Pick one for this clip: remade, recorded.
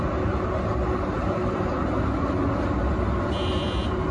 recorded